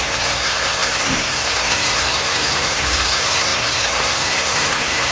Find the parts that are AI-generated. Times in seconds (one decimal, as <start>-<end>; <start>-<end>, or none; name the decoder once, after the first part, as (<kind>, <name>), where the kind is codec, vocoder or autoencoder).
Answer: 0.0-5.1 (codec, SNAC)

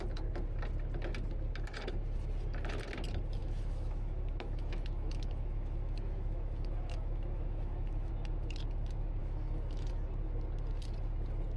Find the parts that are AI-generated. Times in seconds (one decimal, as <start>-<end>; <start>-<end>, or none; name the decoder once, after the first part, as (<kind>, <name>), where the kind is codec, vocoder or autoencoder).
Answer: 3.4-8.1 (autoencoder, DAC-VAE); 9.2-9.9

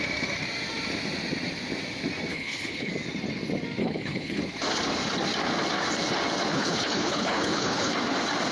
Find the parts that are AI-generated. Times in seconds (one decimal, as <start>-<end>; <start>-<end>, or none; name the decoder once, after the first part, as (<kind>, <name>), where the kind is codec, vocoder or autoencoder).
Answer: 2.3-2.9 (codec, HILCodec); 3.8-4.4; 6.5-7.9

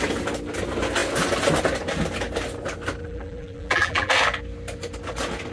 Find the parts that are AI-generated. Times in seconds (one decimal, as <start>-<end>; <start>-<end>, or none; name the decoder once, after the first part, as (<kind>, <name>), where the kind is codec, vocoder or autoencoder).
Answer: 3.0-4.1 (vocoder, BigVGAN v2)

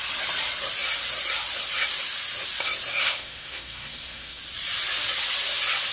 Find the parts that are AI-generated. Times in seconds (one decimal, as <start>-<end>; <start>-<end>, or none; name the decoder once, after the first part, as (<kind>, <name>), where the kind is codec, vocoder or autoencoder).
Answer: 3.0-4.4 (codec, SNAC)